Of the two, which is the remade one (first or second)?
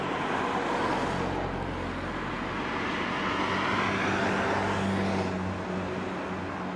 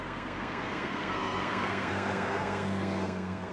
second